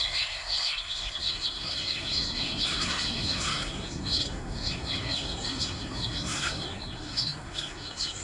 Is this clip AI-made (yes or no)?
yes